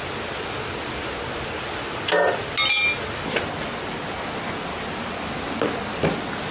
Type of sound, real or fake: real